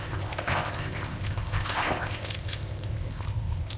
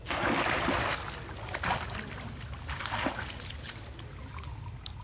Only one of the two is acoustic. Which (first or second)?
second